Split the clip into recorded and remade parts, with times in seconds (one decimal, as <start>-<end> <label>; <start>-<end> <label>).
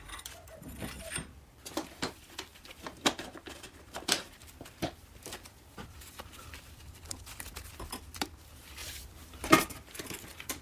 0.0-2.5 recorded; 2.5-6.8 remade; 6.8-10.6 recorded